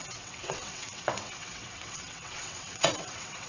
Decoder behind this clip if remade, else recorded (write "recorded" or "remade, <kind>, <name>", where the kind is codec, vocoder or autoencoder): remade, vocoder, WaveNeXt